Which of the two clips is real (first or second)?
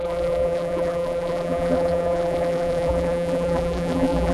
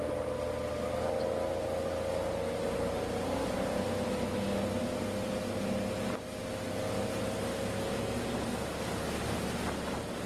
second